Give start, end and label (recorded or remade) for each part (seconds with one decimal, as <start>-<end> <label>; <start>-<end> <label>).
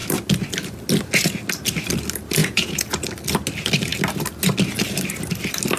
0.0-2.4 recorded; 2.4-3.0 remade; 3.0-5.8 recorded